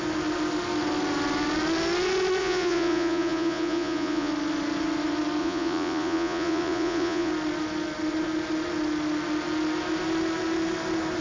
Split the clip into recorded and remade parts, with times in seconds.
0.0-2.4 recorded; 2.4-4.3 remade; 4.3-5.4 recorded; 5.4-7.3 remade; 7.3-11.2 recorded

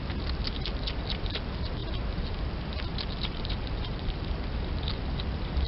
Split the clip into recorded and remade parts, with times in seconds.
0.0-2.9 recorded; 2.9-4.3 remade; 4.3-5.7 recorded